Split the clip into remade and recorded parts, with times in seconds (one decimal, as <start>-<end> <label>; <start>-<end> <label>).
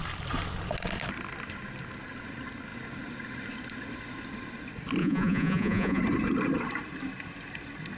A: 0.0-5.0 recorded; 5.0-6.0 remade; 6.0-8.0 recorded